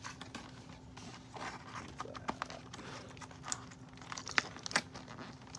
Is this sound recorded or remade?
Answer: recorded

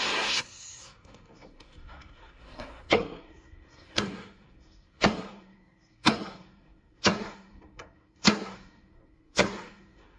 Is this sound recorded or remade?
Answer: remade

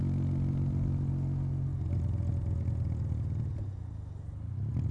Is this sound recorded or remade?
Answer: recorded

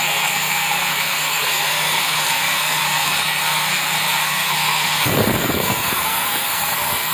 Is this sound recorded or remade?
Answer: remade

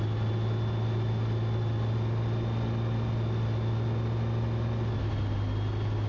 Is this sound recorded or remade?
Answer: recorded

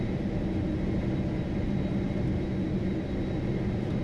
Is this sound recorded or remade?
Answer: recorded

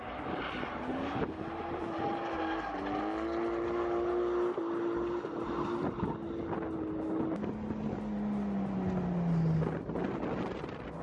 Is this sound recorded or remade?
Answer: recorded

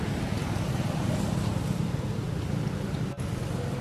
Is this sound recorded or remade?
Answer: recorded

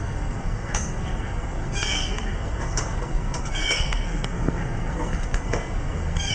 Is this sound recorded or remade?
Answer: remade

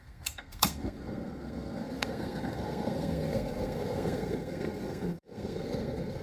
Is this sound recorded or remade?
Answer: remade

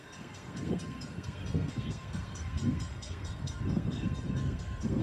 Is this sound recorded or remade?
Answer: remade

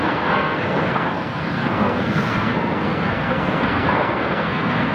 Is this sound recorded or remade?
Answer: remade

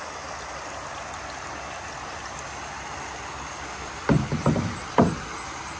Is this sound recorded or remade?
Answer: recorded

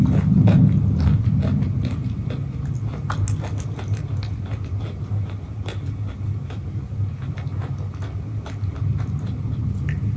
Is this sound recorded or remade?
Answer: recorded